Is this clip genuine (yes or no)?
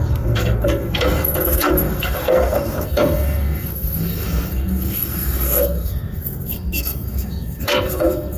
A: no